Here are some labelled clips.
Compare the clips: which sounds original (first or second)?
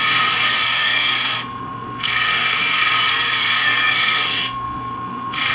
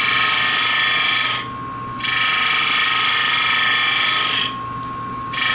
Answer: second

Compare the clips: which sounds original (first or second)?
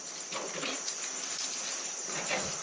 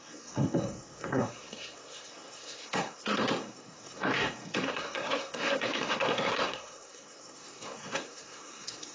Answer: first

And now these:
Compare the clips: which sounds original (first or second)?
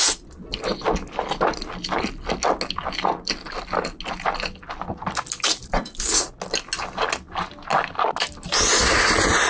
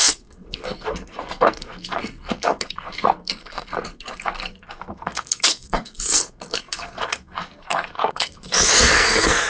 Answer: first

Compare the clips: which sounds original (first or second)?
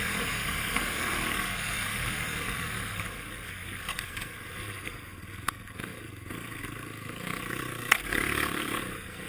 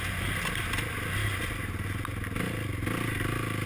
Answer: second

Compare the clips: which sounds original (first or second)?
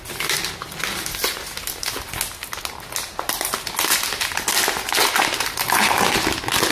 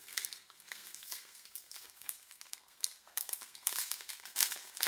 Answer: first